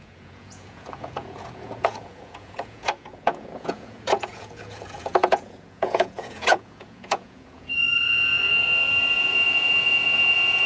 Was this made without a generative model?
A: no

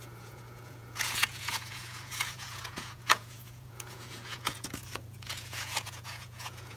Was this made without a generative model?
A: no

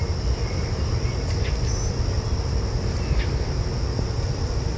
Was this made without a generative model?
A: yes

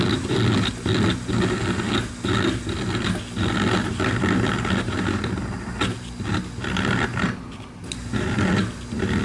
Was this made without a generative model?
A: yes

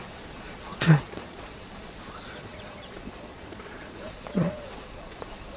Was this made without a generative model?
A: no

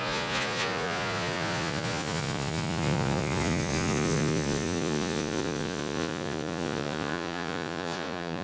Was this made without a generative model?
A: no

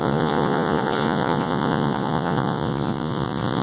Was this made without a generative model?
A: no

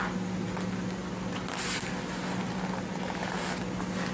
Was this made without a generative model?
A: yes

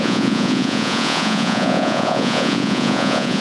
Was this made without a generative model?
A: no